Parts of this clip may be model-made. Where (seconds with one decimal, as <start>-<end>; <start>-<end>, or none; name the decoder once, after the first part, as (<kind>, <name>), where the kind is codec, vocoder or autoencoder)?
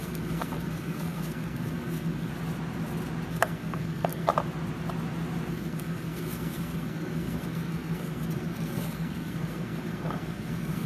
0.0-2.3 (codec, SNAC); 3.3-4.3; 5.5-10.9